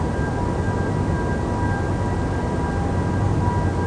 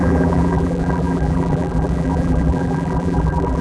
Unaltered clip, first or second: first